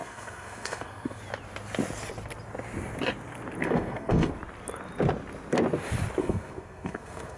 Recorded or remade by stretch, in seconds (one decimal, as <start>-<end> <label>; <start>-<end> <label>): 0.0-1.2 remade; 1.2-3.6 recorded; 3.6-4.3 remade; 4.3-6.2 recorded; 6.2-7.4 remade